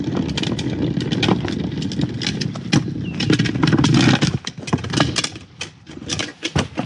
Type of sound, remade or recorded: recorded